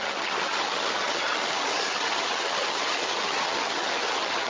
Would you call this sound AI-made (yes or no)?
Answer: yes